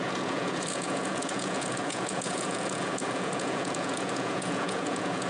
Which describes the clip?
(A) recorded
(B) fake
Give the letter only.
B